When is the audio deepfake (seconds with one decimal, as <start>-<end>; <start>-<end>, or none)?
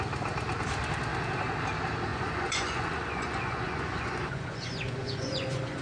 2.1-5.8